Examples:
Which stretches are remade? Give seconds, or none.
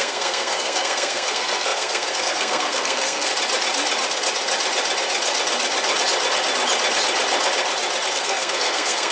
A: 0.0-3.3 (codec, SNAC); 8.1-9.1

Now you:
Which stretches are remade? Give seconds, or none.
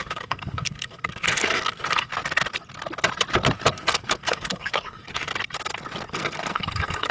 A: 0.0-2.1 (codec, SNAC); 3.7-5.3; 6.1-7.1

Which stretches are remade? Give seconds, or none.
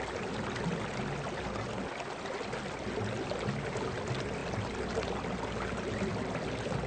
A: none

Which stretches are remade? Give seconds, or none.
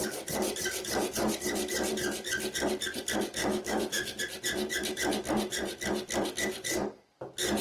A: 3.4-4.2 (autoencoder, DAC-VAE)